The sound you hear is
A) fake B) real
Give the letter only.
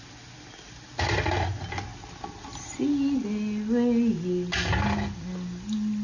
B